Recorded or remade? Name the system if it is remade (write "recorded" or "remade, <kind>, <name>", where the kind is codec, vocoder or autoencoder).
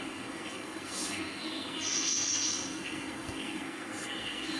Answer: remade, codec, SNAC